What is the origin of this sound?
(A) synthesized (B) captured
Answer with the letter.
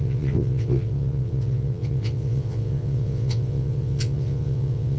A